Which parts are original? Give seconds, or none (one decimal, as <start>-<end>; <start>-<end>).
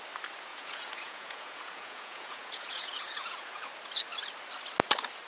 0.0-0.5; 3.7-5.3